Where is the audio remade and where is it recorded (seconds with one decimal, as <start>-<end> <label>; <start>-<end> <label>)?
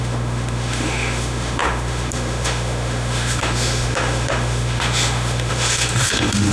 0.0-6.5 remade